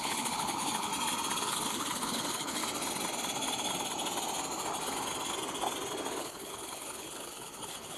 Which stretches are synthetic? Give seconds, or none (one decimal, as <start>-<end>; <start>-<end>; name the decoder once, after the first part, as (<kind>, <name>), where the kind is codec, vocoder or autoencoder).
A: 0.0-0.9 (codec, HILCodec); 1.4-2.6; 6.2-8.0